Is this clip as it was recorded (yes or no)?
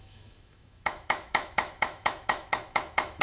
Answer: no